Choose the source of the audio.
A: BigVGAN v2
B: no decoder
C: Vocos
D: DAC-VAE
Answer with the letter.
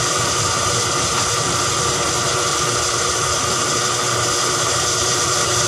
A